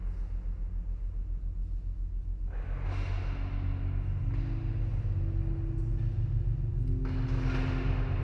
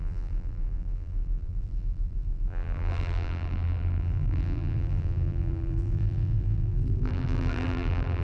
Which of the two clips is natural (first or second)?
first